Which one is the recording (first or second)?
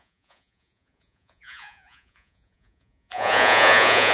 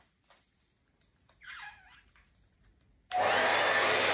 second